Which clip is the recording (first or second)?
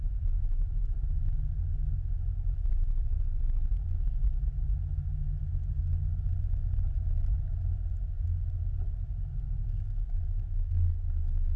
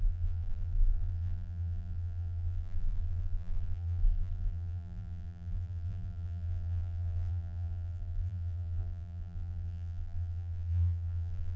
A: first